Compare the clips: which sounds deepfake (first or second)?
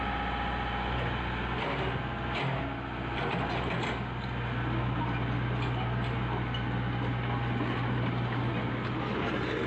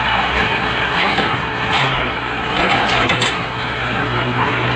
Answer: second